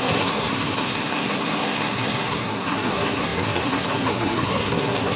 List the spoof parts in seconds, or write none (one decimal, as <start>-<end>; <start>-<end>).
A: 0.0-5.2